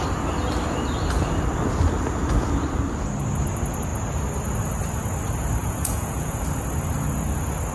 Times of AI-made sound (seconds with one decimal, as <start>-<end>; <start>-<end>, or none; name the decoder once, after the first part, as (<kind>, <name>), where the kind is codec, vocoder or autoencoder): 5.6-6.4 (vocoder, Vocos)